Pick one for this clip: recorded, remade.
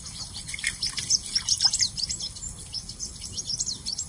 recorded